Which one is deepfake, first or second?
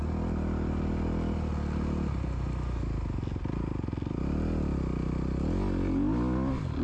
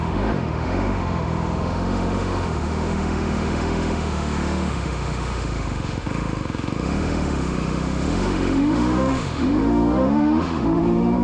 second